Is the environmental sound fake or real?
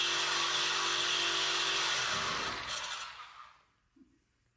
real